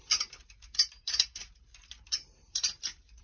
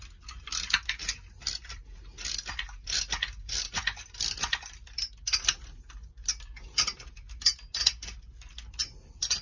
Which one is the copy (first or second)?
first